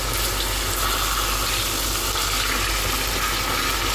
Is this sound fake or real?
real